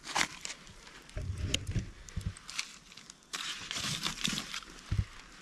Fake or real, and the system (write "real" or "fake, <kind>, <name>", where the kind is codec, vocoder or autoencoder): real